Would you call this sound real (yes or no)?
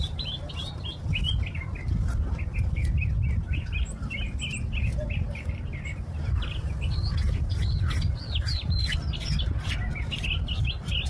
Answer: yes